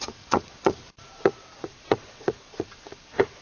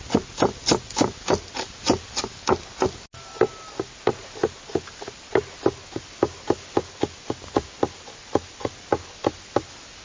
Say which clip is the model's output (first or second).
first